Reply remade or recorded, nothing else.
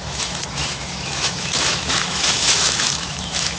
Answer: remade